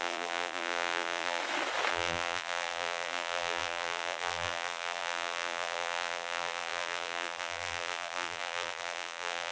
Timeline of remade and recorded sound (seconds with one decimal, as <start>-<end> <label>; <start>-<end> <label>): 0.0-1.4 remade; 1.4-1.9 recorded; 1.9-9.5 remade